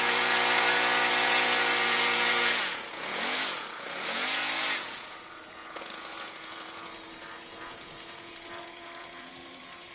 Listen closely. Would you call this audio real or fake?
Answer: fake